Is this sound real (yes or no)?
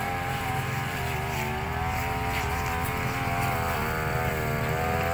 yes